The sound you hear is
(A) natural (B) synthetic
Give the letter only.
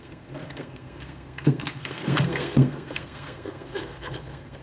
B